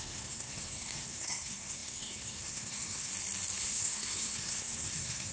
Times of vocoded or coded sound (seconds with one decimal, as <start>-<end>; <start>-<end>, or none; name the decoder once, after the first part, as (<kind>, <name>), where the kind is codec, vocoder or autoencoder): 0.0-3.1 (codec, SNAC); 3.6-5.3